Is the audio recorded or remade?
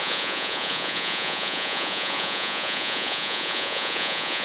remade